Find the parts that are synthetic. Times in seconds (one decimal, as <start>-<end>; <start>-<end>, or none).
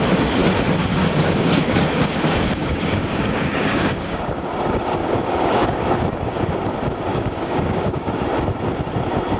0.8-4.5; 5.0-5.8; 7.1-8.1